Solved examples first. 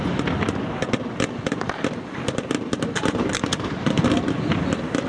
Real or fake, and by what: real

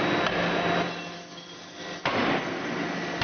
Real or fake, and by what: real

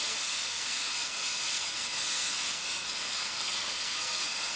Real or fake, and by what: fake, codec, SNAC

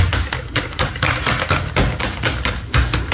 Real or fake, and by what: real